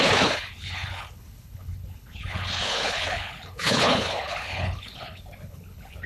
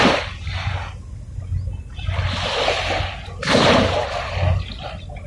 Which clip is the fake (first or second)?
first